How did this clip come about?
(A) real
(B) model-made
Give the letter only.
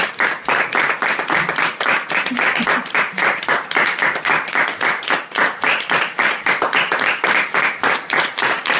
B